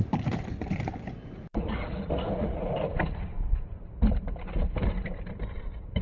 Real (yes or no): no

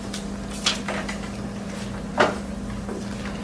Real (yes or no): yes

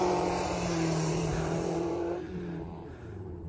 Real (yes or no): no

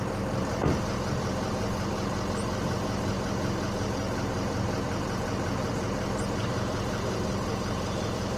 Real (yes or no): no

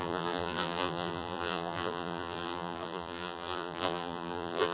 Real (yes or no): no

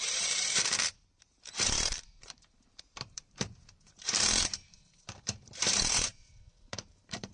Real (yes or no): no